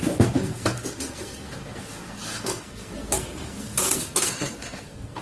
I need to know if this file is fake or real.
fake